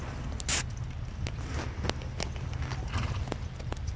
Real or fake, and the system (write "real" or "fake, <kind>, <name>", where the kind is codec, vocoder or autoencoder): real